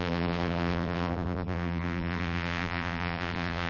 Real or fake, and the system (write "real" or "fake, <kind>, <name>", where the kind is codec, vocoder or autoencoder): fake, vocoder, BigVGAN v2